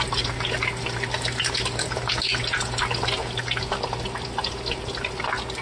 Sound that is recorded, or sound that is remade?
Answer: recorded